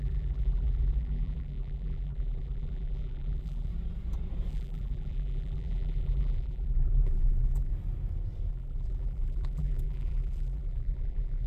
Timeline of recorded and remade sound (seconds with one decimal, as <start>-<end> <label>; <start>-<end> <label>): 0.0-3.7 remade; 3.7-4.5 recorded; 4.5-7.7 remade; 7.7-8.5 recorded; 8.5-11.5 remade

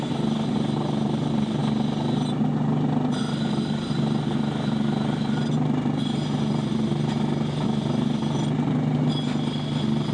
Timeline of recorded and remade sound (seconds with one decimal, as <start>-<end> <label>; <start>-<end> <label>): 0.0-10.1 recorded

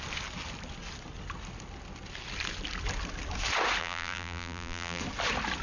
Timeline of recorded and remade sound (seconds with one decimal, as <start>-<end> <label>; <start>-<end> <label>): 0.0-3.8 recorded; 3.8-5.0 remade; 5.0-5.6 recorded

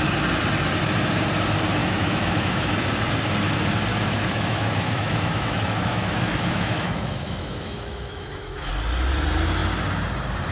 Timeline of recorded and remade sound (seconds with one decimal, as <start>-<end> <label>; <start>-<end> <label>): 0.0-1.8 recorded; 1.8-2.7 remade; 2.7-3.9 recorded; 3.9-8.7 remade; 8.7-10.5 recorded